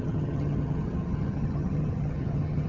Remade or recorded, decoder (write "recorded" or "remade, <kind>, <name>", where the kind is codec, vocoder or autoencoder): remade, vocoder, HiFi-GAN